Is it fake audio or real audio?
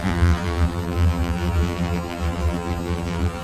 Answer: fake